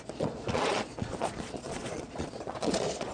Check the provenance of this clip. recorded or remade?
remade